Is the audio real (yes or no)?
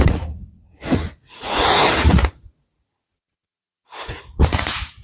no